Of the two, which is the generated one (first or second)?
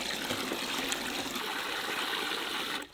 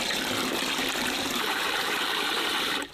second